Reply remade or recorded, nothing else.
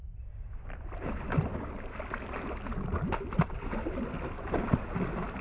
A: recorded